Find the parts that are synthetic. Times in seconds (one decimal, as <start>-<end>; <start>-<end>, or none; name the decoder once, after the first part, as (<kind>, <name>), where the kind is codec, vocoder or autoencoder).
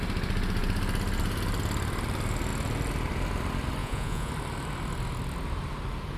3.8-4.3 (vocoder, Vocos)